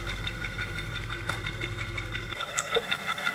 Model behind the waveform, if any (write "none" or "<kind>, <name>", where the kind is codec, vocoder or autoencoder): codec, SNAC